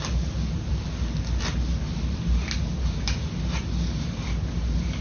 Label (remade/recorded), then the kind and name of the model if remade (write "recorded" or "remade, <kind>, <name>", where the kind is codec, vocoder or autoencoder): recorded